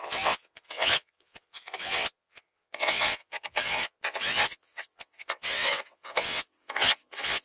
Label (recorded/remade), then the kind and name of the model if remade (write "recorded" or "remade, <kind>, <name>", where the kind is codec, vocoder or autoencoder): remade, vocoder, WaveNeXt